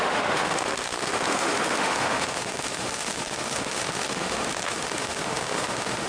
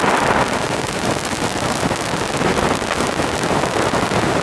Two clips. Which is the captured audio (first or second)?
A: second